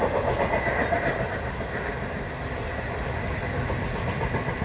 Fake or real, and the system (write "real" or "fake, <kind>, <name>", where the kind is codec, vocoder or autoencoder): real